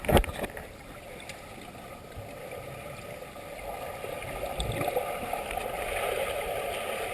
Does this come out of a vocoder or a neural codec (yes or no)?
no